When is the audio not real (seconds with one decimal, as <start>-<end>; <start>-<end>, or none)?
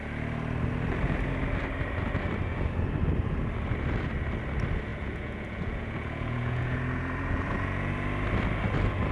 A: 4.9-7.9